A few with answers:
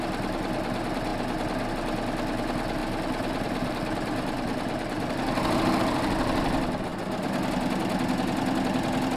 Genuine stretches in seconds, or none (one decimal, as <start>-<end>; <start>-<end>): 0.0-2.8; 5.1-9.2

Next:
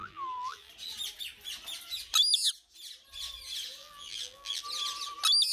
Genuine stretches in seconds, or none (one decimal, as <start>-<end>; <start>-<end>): 0.7-3.8; 4.6-5.5

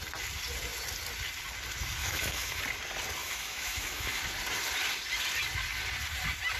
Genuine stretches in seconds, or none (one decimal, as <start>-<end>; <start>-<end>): 0.0-2.0; 2.6-3.2; 4.2-6.6

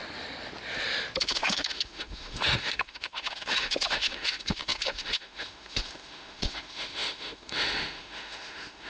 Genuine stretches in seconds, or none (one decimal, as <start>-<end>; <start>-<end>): 0.0-1.2

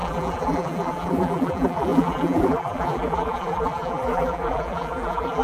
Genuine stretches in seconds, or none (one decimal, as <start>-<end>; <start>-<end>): none

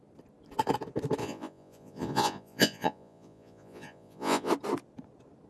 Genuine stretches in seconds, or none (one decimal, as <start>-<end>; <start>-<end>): 0.0-1.2; 4.5-5.5